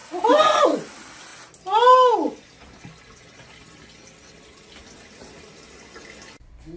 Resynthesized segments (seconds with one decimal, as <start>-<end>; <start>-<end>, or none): none